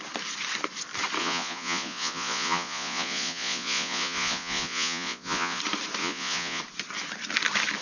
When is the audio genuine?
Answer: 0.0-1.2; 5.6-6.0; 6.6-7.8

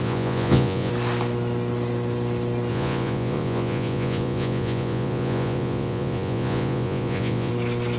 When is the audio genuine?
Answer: 0.9-2.7; 7.5-8.0

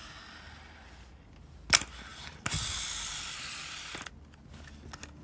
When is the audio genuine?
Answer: 0.0-5.2

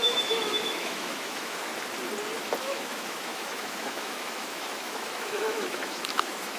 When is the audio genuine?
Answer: 1.7-2.6

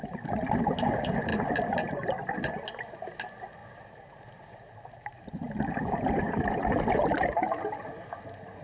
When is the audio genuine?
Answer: 0.0-3.6; 8.1-8.6

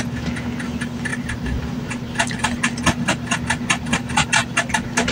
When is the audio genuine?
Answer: 0.0-1.1; 1.9-5.1

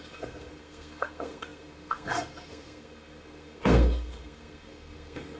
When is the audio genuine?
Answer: none